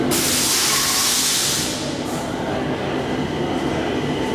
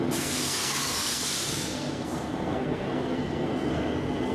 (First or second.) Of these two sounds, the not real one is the second